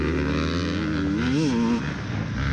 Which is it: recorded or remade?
recorded